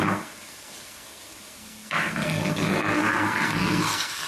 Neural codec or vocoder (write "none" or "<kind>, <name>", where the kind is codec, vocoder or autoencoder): codec, SNAC